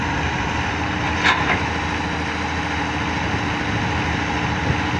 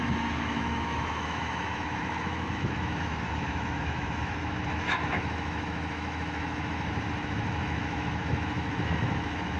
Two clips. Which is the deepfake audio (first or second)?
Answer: second